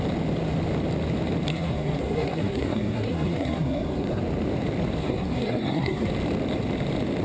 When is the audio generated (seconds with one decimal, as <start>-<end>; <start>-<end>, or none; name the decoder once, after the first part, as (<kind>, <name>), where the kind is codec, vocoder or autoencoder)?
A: 1.5-4.2 (codec, SNAC); 5.0-6.1